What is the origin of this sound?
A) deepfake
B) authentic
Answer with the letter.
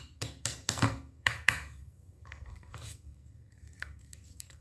A